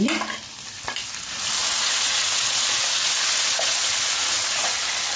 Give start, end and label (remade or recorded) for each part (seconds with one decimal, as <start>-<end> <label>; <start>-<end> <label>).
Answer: 0.0-1.6 recorded; 1.6-4.7 remade; 4.7-5.2 recorded